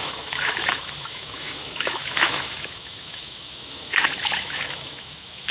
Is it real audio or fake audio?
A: fake